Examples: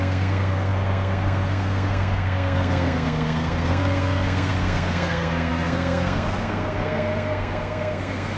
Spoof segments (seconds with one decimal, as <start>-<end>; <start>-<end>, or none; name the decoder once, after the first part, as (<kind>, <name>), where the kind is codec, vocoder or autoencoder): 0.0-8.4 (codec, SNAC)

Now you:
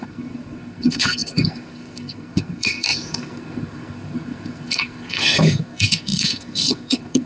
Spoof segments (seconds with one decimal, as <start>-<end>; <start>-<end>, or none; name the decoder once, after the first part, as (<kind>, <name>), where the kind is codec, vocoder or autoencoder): 0.0-7.3 (codec, SNAC)

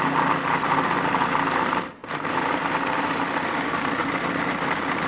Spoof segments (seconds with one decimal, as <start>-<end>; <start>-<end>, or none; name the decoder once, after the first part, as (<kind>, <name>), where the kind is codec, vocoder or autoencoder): none

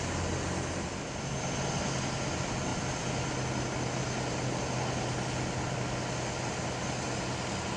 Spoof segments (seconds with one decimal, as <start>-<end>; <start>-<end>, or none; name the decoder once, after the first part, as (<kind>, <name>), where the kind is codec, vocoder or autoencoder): none

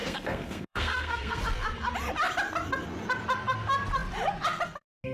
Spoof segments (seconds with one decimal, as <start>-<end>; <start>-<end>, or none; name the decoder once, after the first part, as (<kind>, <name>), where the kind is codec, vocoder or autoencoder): 0.0-1.4 (codec, SNAC)